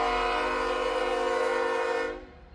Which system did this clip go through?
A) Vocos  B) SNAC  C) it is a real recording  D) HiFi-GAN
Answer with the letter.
C